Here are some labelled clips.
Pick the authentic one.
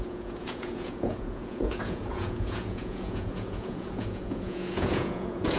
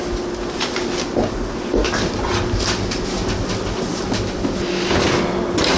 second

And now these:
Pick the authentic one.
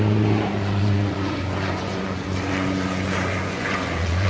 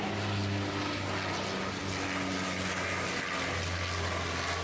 second